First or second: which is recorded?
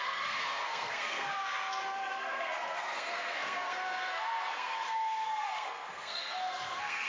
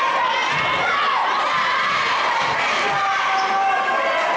second